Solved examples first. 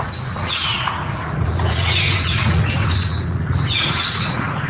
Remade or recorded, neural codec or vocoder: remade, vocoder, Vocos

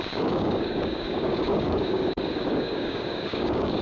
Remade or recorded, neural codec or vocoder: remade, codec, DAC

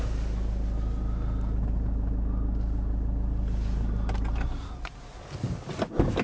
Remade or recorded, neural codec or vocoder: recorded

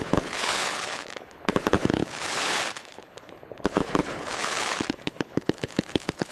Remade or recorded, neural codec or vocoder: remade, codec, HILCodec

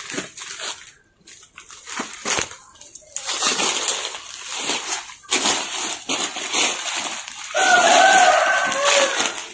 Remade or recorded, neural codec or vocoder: recorded